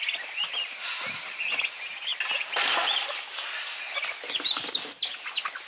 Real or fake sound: real